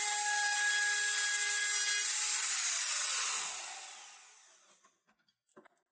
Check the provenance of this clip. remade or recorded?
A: recorded